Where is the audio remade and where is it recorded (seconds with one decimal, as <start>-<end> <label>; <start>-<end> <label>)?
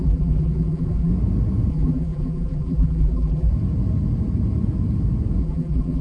0.0-1.1 remade; 1.1-1.7 recorded; 1.7-3.5 remade; 3.5-5.4 recorded; 5.4-6.0 remade